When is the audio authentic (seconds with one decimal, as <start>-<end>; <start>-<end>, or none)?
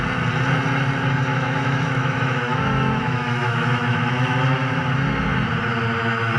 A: 0.0-1.3; 4.9-6.4